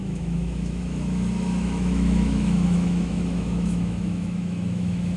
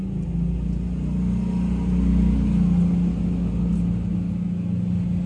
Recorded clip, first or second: second